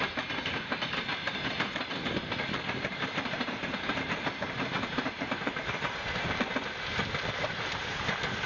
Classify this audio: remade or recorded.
remade